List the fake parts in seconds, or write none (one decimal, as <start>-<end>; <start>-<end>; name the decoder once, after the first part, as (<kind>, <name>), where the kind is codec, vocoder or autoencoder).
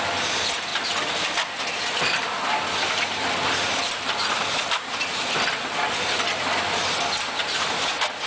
none